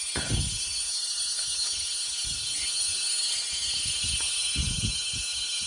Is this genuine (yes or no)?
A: no